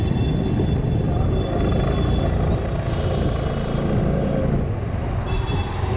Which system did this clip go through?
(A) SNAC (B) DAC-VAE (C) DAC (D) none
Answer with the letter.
D